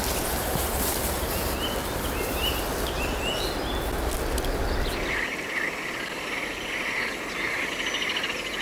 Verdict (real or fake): real